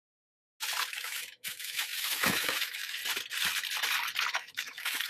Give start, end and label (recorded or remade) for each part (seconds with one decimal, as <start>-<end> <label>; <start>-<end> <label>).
0.0-0.9 recorded; 0.9-3.0 remade; 3.0-4.3 recorded; 4.3-5.1 remade